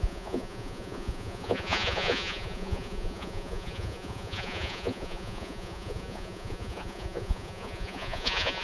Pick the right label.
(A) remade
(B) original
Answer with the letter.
A